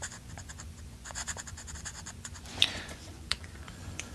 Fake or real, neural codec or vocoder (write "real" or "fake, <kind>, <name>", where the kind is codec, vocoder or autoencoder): fake, vocoder, Vocos